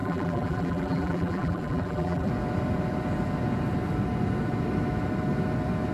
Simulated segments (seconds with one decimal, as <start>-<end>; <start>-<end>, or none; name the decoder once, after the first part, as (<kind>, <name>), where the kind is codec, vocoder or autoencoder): 0.0-2.3 (vocoder, BigVGAN v2)